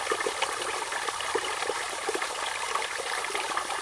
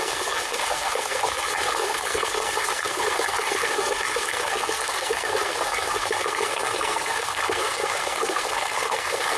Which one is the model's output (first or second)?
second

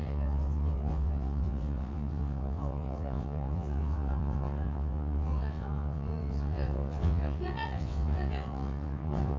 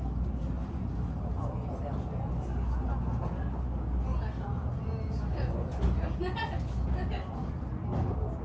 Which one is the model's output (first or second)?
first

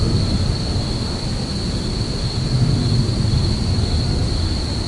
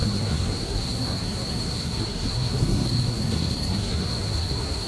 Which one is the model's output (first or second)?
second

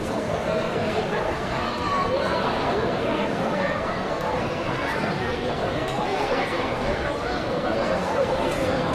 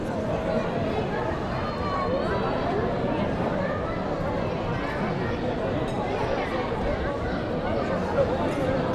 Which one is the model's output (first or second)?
first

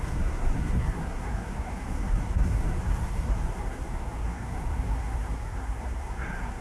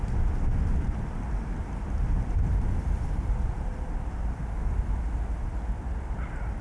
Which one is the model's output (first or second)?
first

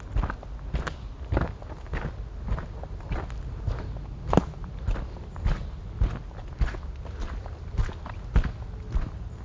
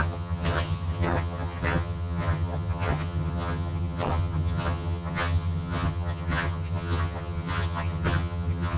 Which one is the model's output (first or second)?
second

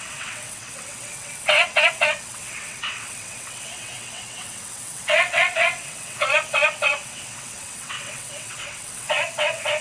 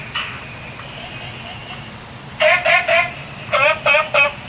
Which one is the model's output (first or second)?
first